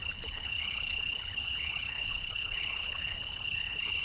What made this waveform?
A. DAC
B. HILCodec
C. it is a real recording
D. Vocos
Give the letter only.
B